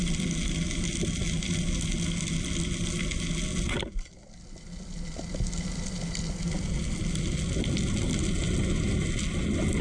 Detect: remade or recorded recorded